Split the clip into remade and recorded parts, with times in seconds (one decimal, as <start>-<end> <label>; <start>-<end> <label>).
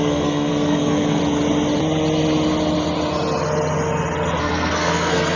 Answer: 0.0-1.2 remade; 1.2-4.4 recorded; 4.4-5.4 remade